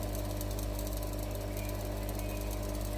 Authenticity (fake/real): real